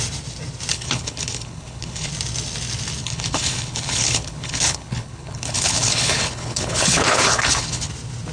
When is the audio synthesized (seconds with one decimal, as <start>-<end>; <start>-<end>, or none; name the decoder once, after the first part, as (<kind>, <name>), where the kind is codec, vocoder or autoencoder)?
0.7-2.1 (codec, HILCodec); 3.0-7.9